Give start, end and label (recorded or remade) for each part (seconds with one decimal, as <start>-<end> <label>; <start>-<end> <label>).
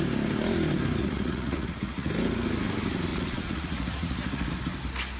0.0-1.0 recorded; 1.0-2.1 remade; 2.1-3.1 recorded; 3.1-4.5 remade; 4.5-5.2 recorded